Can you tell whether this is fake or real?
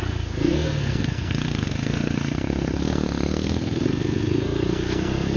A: fake